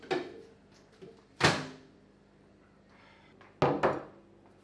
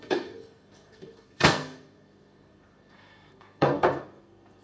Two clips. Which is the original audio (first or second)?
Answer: first